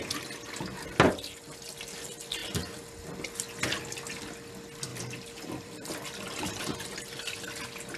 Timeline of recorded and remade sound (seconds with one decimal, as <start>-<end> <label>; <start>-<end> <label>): 0.0-4.9 recorded; 4.9-6.0 remade; 6.0-8.0 recorded